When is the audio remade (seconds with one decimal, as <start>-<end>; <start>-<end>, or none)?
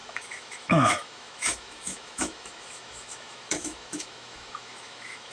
0.0-5.3